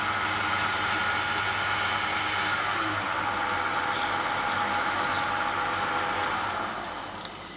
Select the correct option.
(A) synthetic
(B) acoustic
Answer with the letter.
B